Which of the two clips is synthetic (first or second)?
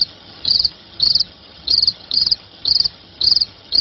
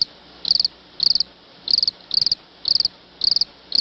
first